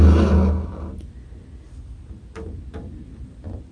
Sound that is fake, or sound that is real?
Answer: real